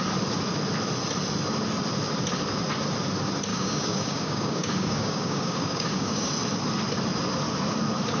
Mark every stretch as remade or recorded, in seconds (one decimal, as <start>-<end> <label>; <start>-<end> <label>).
0.0-3.5 recorded; 3.5-6.3 remade; 6.3-8.2 recorded